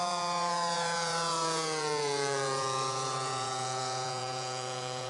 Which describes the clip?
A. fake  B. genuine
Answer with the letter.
A